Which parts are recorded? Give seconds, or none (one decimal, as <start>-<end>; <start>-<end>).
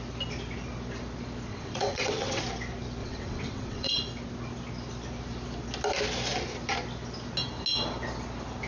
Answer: 0.0-1.5; 2.4-3.0; 4.0-8.7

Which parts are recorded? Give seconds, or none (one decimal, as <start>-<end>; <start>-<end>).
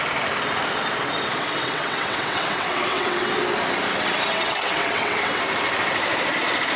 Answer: 0.0-1.4; 3.3-4.3; 5.4-6.8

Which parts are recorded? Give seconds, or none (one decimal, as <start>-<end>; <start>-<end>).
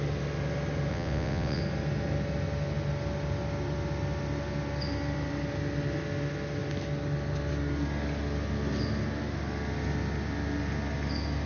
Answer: 0.0-0.9; 1.6-11.5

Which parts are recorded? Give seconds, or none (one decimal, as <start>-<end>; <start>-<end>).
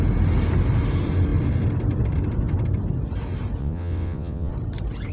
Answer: 0.0-3.6; 4.5-5.1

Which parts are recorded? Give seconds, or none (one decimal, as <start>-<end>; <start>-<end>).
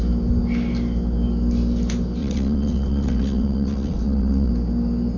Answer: 0.0-2.2; 4.5-5.2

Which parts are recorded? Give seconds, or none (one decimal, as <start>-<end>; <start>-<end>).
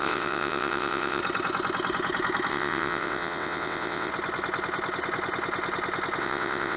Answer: 1.2-2.5; 4.1-6.2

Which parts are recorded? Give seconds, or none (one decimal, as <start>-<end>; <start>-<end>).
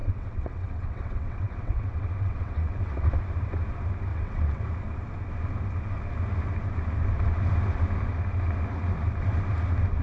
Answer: 3.1-4.1; 4.6-10.0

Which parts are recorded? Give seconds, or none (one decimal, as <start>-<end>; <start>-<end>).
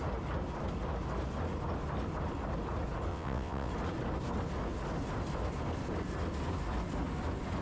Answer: 0.0-3.1; 3.7-7.6